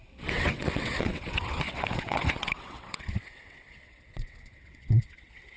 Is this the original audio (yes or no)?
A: no